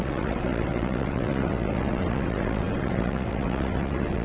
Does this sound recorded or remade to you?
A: remade